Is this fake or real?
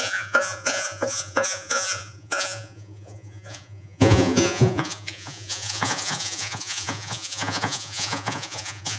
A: fake